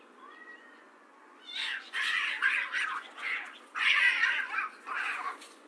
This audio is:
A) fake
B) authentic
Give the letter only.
A